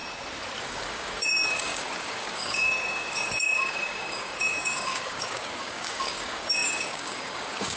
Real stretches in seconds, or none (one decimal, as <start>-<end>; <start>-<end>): 0.0-0.6